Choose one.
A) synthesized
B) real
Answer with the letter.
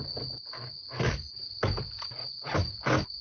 B